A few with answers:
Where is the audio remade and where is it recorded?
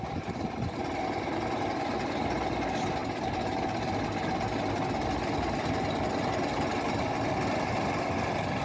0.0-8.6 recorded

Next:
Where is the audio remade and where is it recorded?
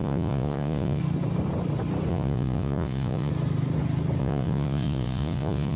0.0-1.0 remade; 1.0-2.1 recorded; 2.1-3.3 remade; 3.3-4.2 recorded; 4.2-5.8 remade